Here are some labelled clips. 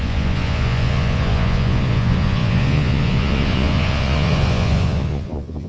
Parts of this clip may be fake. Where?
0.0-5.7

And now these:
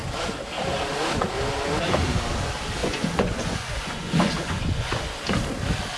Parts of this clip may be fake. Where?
2.8-5.1

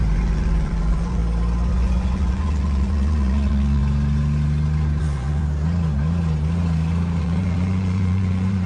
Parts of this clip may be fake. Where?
0.0-1.2; 1.7-3.8; 5.0-5.4; 7.2-8.7

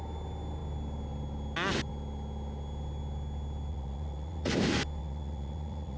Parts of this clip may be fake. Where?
3.7-4.5; 5.0-6.0

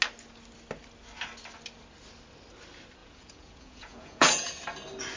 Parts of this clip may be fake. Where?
3.0-4.5

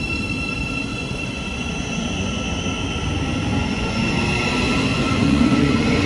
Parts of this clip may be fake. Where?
0.9-2.4; 3.5-4.1; 4.9-6.1